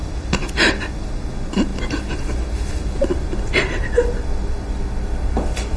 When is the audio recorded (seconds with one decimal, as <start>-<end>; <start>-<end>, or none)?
0.0-5.8